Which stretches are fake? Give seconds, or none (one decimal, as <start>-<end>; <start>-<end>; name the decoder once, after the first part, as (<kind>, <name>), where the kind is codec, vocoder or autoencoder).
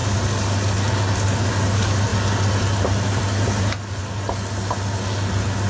none